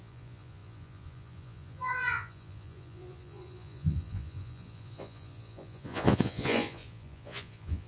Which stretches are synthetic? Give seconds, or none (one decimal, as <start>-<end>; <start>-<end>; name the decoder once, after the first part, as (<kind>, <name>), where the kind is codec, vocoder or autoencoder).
0.0-7.9 (vocoder, Vocos)